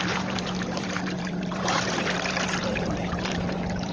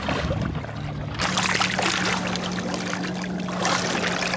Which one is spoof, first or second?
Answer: first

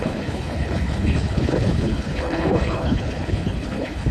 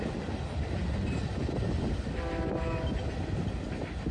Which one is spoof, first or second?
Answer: first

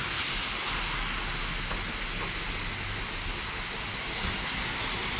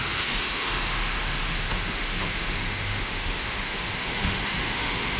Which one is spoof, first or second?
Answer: second